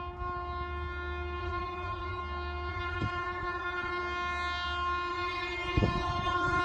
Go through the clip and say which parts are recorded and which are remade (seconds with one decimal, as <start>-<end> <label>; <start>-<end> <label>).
0.0-1.4 recorded; 1.4-2.2 remade; 2.2-2.7 recorded; 2.7-4.0 remade; 4.0-5.1 recorded; 5.1-6.6 remade